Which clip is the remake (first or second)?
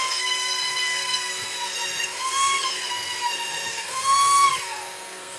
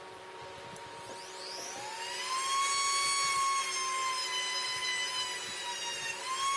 first